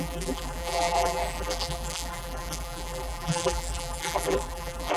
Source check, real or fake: fake